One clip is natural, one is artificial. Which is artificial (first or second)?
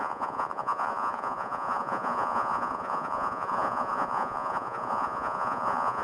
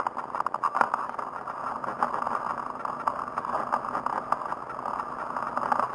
first